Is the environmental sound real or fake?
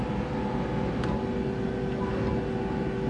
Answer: real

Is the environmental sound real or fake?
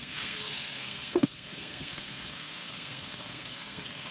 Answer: fake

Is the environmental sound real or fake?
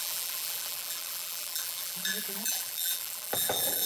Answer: fake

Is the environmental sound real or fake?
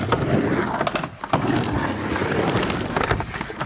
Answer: real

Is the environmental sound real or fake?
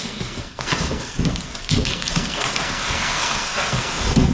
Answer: fake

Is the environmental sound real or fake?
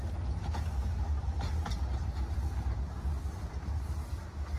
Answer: real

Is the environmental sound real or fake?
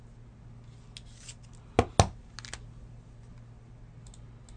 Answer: real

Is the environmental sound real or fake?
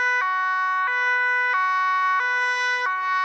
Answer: real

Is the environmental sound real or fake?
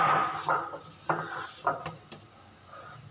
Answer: real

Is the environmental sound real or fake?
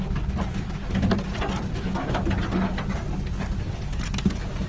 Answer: real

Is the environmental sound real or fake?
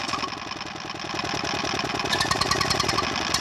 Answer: real